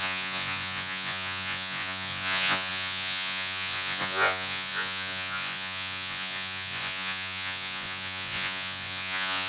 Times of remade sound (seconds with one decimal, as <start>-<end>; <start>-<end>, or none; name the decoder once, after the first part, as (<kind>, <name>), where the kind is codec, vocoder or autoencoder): 0.0-9.5 (vocoder, Vocos)